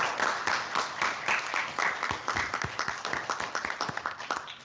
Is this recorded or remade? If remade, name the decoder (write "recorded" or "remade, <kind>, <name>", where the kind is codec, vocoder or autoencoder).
recorded